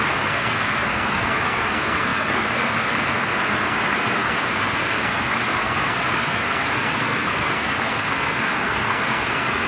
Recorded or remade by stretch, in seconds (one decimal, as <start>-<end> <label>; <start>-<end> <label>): 0.0-9.7 remade

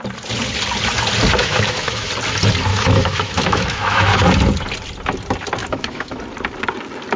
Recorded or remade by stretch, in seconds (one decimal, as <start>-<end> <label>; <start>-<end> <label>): 0.0-1.4 recorded; 1.4-2.1 remade; 2.1-2.7 recorded; 2.7-4.1 remade; 4.1-5.6 recorded; 5.6-6.2 remade; 6.2-7.2 recorded